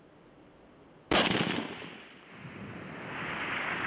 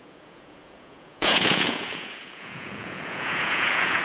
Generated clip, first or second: second